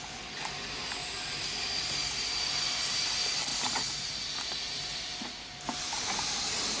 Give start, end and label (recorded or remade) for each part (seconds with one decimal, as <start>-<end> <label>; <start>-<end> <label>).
0.0-6.8 recorded